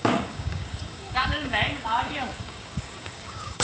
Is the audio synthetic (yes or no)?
yes